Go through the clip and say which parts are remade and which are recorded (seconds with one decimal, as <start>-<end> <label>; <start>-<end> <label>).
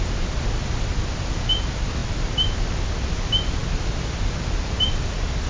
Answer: 0.0-5.5 recorded